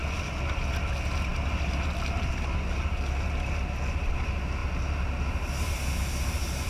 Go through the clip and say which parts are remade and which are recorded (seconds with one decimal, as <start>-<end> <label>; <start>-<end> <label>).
0.0-0.6 remade; 0.6-6.7 recorded

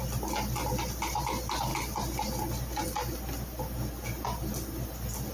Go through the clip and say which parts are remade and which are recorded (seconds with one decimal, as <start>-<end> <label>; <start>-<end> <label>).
0.0-5.3 recorded

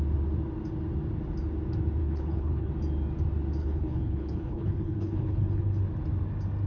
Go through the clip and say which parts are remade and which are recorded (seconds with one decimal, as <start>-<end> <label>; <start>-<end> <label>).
0.0-2.0 recorded; 2.0-2.7 remade; 2.7-3.6 recorded; 3.6-5.8 remade; 5.8-6.7 recorded

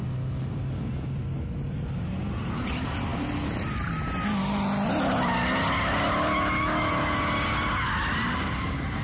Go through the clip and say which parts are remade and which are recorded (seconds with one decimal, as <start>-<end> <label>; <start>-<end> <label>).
0.0-9.0 recorded

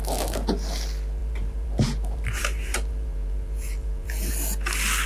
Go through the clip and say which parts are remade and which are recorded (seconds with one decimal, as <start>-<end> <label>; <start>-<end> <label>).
0.0-1.2 recorded; 1.2-4.3 remade; 4.3-5.1 recorded